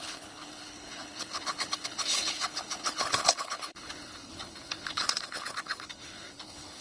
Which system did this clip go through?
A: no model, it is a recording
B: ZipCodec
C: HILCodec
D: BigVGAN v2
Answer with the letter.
C